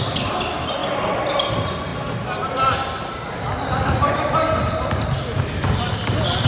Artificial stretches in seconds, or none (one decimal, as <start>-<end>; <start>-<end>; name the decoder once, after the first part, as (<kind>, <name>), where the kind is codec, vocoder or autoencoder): none